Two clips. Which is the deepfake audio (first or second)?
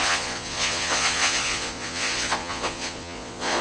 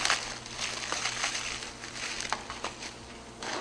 first